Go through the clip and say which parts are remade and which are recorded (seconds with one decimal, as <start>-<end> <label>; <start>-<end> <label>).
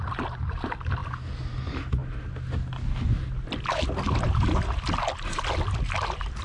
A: 0.0-6.4 recorded